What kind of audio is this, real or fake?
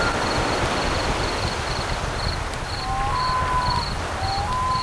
real